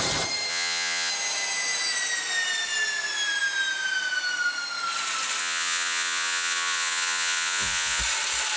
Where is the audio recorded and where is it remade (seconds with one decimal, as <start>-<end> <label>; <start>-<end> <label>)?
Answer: 0.0-0.5 recorded; 0.5-1.1 remade; 1.1-5.4 recorded; 5.4-8.0 remade; 8.0-8.6 recorded